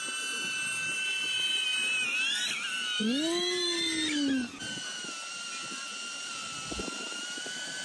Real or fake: real